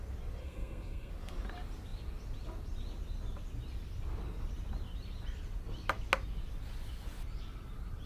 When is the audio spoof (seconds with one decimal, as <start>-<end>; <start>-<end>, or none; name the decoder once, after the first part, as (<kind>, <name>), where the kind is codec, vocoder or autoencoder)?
0.4-1.1 (codec, SNAC)